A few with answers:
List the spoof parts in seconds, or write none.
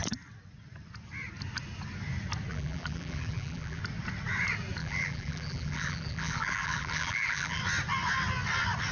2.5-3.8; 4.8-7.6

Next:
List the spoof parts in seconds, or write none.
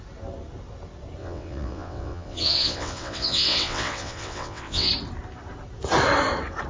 1.2-4.9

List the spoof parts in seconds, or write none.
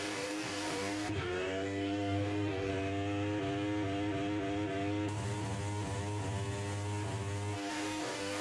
0.0-2.7; 7.7-8.4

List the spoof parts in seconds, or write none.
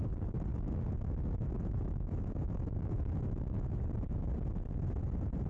0.5-3.8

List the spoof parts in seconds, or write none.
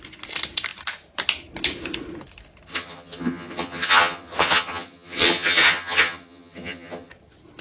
2.7-7.1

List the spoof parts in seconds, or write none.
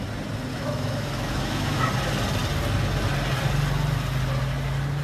0.5-1.9